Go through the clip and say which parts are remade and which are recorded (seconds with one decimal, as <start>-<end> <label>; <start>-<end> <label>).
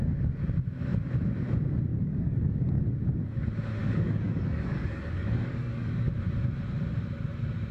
0.0-1.9 recorded; 1.9-2.8 remade; 2.8-3.8 recorded; 3.8-6.1 remade; 6.1-7.7 recorded